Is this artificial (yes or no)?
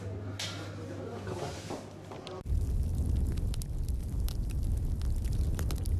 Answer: no